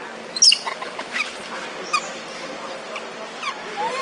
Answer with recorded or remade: recorded